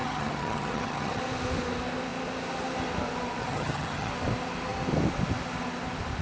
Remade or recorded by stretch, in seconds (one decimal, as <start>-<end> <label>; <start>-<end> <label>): 0.0-1.2 remade; 1.2-3.4 recorded; 3.4-4.1 remade; 4.1-6.2 recorded